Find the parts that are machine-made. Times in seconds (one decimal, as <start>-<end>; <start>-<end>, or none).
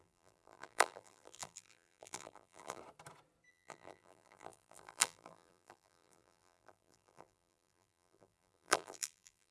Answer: 0.0-2.8; 3.5-9.5